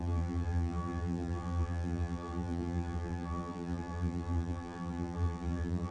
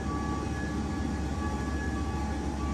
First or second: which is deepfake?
first